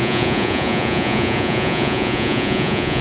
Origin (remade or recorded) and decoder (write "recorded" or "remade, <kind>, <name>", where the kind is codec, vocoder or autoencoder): remade, vocoder, Vocos